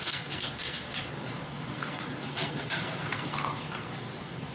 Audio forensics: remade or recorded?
remade